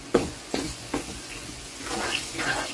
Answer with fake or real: fake